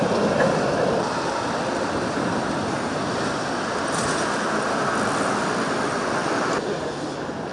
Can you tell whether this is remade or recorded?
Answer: recorded